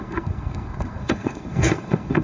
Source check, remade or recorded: remade